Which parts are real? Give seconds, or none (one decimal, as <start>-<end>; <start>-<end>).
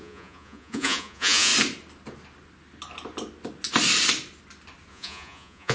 1.5-4.9